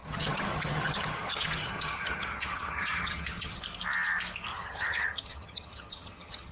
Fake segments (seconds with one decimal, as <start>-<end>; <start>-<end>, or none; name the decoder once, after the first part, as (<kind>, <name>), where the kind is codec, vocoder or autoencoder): 0.0-3.6 (vocoder, HiFi-GAN); 4.5-6.5